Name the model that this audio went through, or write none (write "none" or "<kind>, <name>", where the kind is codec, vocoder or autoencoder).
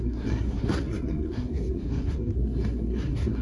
codec, SNAC